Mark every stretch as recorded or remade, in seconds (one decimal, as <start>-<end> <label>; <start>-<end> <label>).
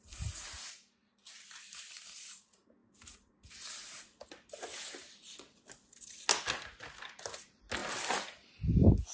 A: 0.0-9.1 recorded